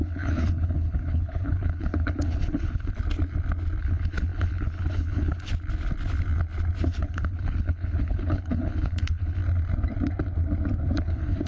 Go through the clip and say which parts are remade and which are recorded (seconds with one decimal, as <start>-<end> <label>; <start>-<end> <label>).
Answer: 0.0-2.9 remade; 2.9-3.8 recorded; 3.8-5.5 remade; 5.5-6.8 recorded; 6.8-9.4 remade; 9.4-11.0 recorded; 11.0-11.5 remade